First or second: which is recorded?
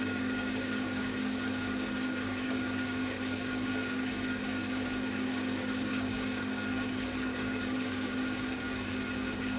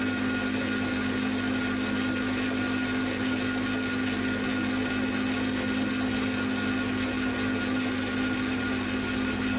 second